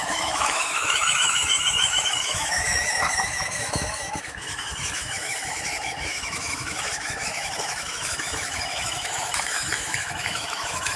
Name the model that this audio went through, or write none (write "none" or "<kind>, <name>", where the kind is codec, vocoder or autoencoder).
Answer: autoencoder, DAC-VAE